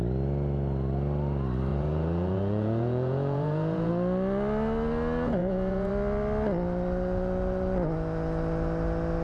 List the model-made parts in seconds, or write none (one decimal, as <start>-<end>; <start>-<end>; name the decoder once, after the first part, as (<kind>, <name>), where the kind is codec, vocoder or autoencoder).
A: 1.7-3.9 (vocoder, Vocos); 5.4-5.9